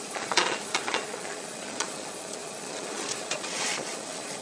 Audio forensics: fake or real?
fake